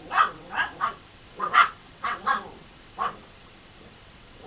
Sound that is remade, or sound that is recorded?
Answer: remade